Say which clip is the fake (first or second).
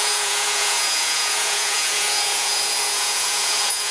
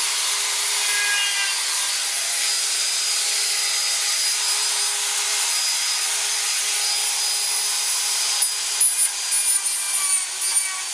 first